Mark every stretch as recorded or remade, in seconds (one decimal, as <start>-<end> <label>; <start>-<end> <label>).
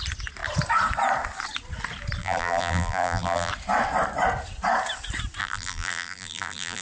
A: 0.0-2.2 recorded; 2.2-3.5 remade; 3.5-5.4 recorded; 5.4-6.8 remade